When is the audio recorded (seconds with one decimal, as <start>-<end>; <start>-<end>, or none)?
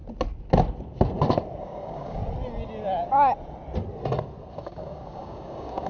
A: 0.0-1.6; 2.2-4.5